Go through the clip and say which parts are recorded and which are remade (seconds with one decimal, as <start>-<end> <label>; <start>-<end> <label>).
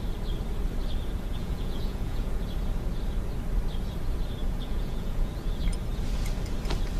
0.0-1.3 recorded; 1.3-2.4 remade; 2.4-4.4 recorded; 4.4-5.3 remade; 5.3-7.0 recorded